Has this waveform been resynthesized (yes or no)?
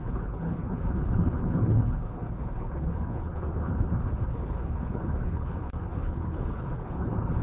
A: yes